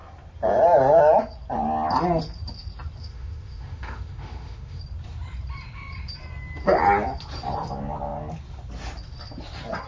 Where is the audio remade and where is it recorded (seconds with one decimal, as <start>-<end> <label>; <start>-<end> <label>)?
0.0-3.0 recorded; 3.0-4.8 remade; 4.8-9.9 recorded